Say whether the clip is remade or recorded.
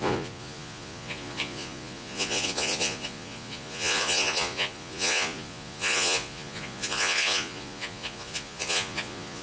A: remade